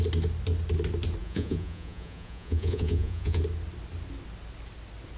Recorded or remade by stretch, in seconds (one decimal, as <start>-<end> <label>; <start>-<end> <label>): 0.0-1.2 recorded; 1.2-3.4 remade; 3.4-5.2 recorded